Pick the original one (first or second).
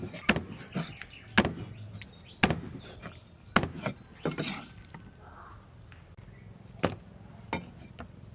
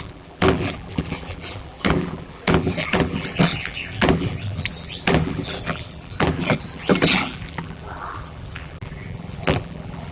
first